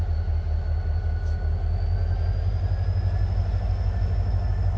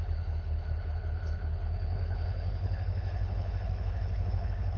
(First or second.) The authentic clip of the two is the first